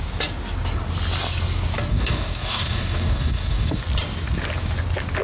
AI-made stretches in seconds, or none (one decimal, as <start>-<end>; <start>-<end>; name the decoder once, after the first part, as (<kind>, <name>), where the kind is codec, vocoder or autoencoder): 1.9-3.8 (codec, DAC)